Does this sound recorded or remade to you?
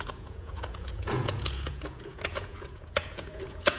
remade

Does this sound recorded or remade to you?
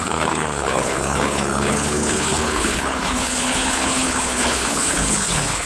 remade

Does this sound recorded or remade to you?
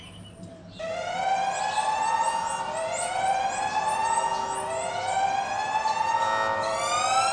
recorded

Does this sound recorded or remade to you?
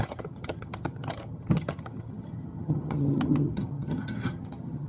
remade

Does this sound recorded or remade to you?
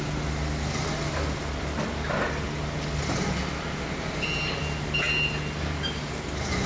recorded